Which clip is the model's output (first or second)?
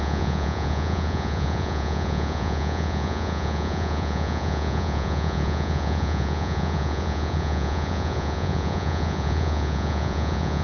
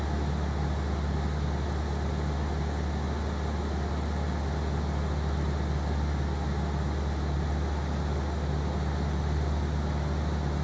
first